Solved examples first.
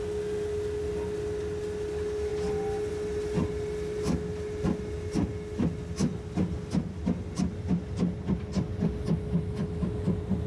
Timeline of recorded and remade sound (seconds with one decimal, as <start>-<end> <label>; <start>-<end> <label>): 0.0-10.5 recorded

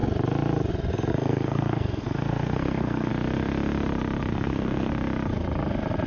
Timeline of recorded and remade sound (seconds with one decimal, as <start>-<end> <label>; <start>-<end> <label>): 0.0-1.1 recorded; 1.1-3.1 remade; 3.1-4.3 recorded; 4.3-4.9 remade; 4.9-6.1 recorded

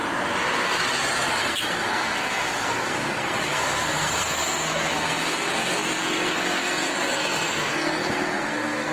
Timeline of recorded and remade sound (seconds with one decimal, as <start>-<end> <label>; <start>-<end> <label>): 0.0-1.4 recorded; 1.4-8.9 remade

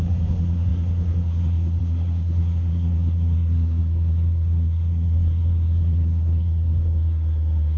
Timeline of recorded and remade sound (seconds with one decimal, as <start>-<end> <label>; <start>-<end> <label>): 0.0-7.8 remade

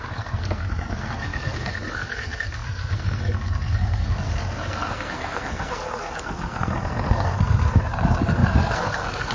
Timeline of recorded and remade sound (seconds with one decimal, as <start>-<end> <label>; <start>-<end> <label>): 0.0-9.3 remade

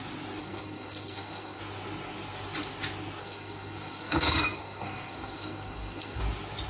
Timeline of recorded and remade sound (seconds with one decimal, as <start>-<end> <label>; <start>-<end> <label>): 0.0-0.4 recorded; 0.4-1.6 remade; 1.6-3.2 recorded; 3.2-6.2 remade; 6.2-6.7 recorded